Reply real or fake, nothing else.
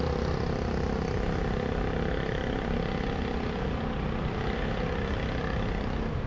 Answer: real